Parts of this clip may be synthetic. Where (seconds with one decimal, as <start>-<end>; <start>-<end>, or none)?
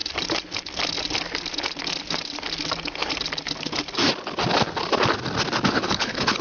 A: 5.7-6.4